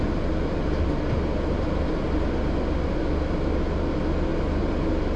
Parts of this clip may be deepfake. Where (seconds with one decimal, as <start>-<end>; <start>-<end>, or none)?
none